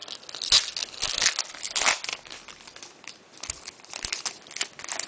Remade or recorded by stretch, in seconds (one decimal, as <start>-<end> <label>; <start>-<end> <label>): 0.0-2.1 recorded; 2.1-4.2 remade; 4.2-5.1 recorded